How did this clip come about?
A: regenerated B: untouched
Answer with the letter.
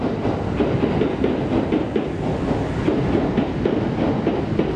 B